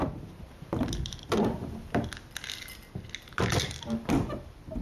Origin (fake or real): real